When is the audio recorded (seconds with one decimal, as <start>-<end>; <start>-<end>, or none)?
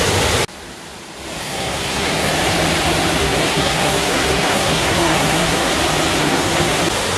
0.0-1.4; 2.3-3.2; 5.7-6.2; 6.8-7.2